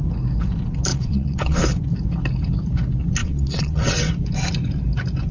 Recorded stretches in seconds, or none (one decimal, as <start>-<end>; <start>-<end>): 0.0-0.9; 1.6-3.2; 4.1-5.3